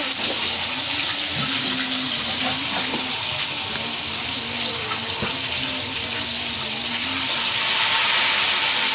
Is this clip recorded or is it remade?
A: recorded